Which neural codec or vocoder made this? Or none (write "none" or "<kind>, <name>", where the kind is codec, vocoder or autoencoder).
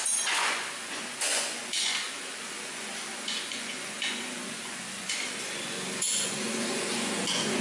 vocoder, Vocos